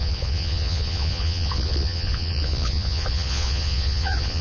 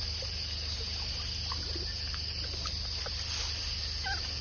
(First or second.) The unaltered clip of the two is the second